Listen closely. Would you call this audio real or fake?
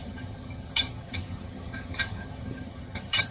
fake